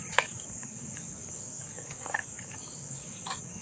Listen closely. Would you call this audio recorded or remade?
remade